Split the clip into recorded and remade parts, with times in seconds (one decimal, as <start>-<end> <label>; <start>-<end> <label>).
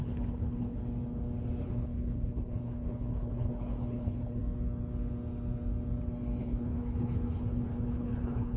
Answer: 0.0-0.8 remade; 0.8-1.6 recorded; 1.6-4.4 remade; 4.4-6.4 recorded; 6.4-8.6 remade